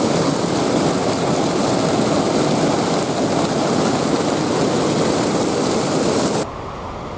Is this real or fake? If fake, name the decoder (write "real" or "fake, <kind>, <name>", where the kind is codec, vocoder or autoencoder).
real